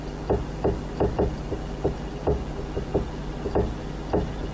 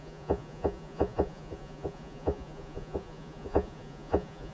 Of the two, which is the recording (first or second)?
first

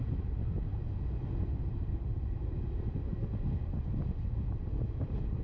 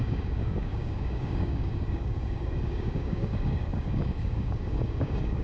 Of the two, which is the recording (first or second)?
first